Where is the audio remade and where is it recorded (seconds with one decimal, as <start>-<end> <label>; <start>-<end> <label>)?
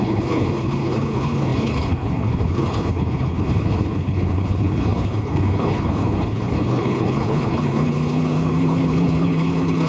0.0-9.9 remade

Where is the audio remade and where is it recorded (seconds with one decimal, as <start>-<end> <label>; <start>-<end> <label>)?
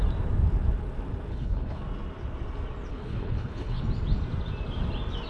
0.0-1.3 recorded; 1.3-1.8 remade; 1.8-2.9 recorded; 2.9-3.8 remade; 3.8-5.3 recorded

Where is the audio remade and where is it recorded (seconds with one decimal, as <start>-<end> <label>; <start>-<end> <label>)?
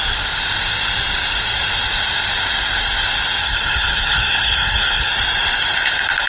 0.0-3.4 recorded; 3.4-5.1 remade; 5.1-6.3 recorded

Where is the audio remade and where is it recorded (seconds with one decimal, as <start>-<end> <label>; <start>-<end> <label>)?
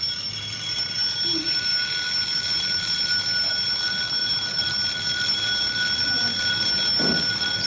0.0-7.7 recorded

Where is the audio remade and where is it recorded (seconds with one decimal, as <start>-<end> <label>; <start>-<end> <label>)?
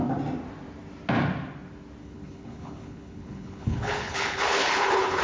0.0-2.0 recorded; 2.0-5.2 remade